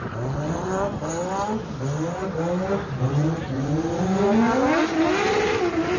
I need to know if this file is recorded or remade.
recorded